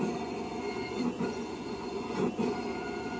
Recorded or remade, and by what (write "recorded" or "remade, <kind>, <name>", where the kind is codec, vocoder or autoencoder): remade, vocoder, Vocos